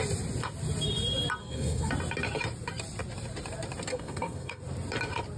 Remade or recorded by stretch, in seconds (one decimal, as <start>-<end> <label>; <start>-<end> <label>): 0.0-1.4 recorded; 1.4-1.9 remade; 1.9-3.9 recorded; 3.9-4.6 remade; 4.6-5.4 recorded